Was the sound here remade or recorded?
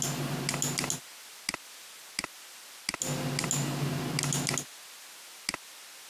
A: recorded